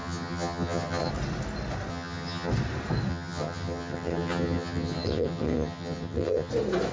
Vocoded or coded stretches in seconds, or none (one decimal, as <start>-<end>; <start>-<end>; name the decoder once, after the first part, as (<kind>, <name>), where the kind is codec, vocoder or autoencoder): 0.0-1.1 (vocoder, HiFi-GAN); 1.9-2.5; 3.1-6.5